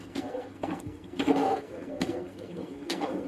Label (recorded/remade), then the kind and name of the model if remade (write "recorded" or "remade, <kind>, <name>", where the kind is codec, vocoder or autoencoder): remade, codec, SNAC